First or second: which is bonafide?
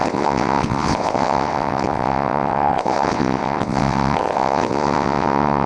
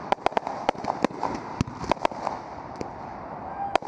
second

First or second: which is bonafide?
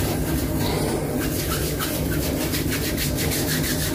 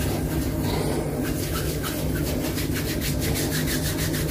second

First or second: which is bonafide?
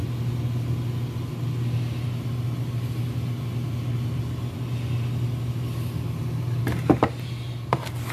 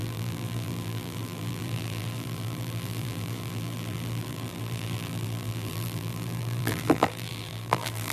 first